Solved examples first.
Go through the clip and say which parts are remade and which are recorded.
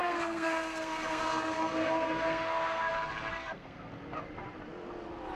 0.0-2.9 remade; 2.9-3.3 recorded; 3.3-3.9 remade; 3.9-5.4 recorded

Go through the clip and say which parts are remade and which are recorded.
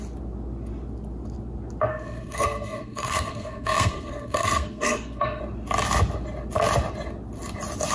0.0-1.9 recorded; 1.9-5.4 remade; 5.4-7.9 recorded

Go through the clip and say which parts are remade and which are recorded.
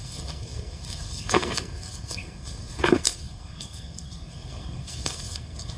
0.0-5.8 remade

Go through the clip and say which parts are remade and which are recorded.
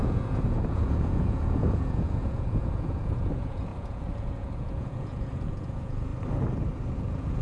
0.0-6.1 remade; 6.1-6.9 recorded; 6.9-7.4 remade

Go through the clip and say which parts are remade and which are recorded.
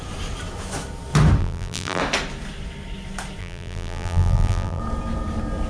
0.0-1.4 recorded; 1.4-2.0 remade; 2.0-3.4 recorded; 3.4-4.8 remade; 4.8-5.7 recorded